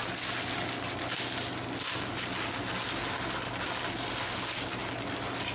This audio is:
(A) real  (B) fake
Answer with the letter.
A